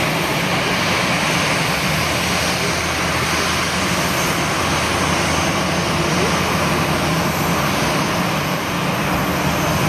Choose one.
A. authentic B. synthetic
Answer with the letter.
A